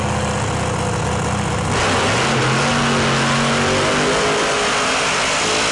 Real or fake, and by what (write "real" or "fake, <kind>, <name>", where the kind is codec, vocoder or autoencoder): real